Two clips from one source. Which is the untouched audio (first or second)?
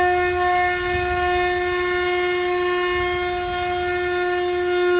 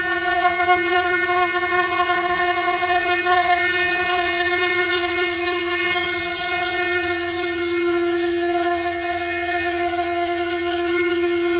first